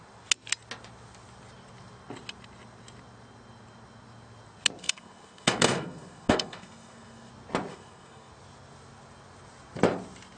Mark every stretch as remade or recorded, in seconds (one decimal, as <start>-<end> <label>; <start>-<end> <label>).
0.0-4.8 recorded; 4.8-7.3 remade; 7.3-7.7 recorded; 7.7-8.3 remade; 8.3-10.4 recorded